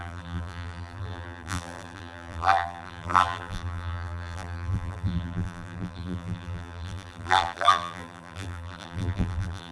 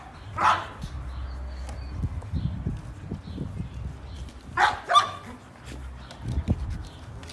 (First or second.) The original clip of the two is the second